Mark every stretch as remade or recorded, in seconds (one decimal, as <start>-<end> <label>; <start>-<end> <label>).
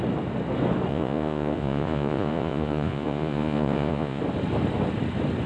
0.0-0.9 recorded; 0.9-4.2 remade; 4.2-5.5 recorded